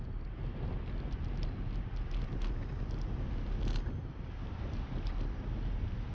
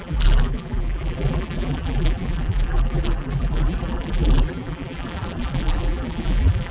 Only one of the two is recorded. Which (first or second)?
first